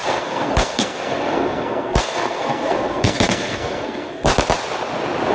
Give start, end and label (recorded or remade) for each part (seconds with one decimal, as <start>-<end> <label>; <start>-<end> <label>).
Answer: 0.0-4.3 remade; 4.3-5.3 recorded

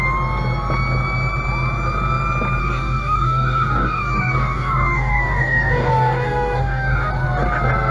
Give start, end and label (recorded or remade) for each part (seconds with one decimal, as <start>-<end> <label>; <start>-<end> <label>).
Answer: 0.0-2.6 recorded; 2.6-7.1 remade; 7.1-7.9 recorded

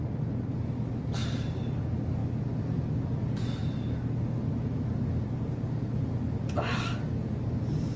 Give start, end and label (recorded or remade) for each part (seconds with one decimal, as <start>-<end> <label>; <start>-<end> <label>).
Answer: 0.0-1.2 recorded; 1.2-1.8 remade; 1.8-8.0 recorded

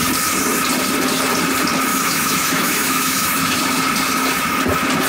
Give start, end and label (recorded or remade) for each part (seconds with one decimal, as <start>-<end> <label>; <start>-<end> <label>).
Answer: 0.0-1.9 recorded; 1.9-3.6 remade; 3.6-5.1 recorded

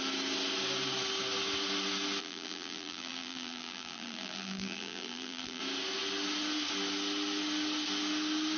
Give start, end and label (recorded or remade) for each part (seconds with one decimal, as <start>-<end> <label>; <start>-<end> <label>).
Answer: 0.0-2.2 recorded; 2.2-5.6 remade; 5.6-8.6 recorded

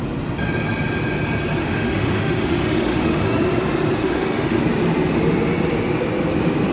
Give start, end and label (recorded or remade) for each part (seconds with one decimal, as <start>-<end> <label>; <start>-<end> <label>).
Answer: 0.0-1.6 recorded; 1.6-3.2 remade; 3.2-4.0 recorded; 4.0-4.6 remade; 4.6-6.7 recorded